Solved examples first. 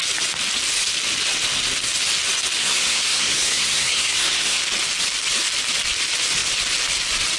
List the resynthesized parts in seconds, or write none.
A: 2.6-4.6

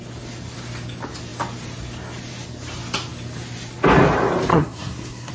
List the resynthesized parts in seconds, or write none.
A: 4.5-5.3

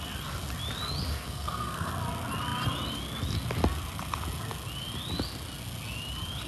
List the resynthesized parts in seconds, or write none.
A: 1.1-1.9

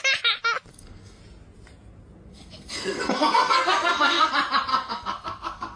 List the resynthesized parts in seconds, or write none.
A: 0.7-1.2; 2.3-4.3; 4.7-5.8

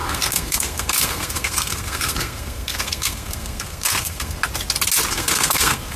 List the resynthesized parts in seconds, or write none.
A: 0.0-4.4; 5.1-6.0

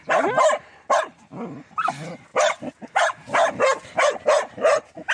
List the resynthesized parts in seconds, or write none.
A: none

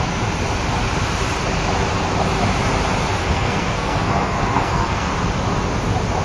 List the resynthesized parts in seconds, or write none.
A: 3.2-5.1